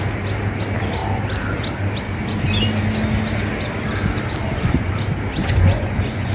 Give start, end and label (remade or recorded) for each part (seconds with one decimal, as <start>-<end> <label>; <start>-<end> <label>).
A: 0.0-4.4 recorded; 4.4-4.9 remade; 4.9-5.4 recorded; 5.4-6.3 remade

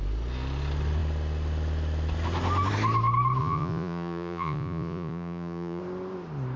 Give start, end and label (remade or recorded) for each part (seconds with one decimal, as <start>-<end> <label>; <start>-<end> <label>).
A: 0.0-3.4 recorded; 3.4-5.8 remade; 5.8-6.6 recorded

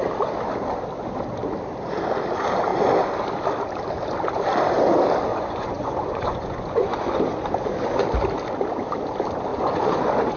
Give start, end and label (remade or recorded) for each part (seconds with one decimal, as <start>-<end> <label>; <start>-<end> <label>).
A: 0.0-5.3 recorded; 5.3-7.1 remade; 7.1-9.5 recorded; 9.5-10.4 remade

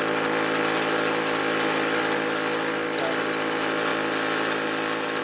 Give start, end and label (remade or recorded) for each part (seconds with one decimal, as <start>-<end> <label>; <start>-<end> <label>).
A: 0.0-5.2 recorded

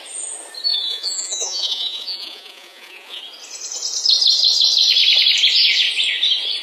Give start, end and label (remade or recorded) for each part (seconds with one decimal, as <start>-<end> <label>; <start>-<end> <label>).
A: 0.0-0.7 recorded; 0.7-3.2 remade; 3.2-6.6 recorded

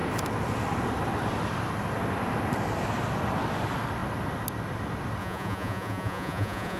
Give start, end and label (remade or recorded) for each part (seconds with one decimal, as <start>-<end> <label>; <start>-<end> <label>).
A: 0.0-5.2 recorded; 5.2-6.8 remade

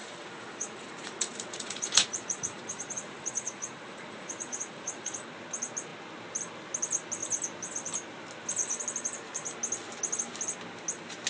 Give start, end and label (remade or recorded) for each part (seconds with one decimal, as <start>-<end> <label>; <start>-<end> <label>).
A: 0.0-5.2 remade; 5.2-11.3 recorded